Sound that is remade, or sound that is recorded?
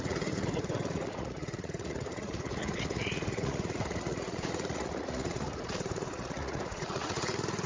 remade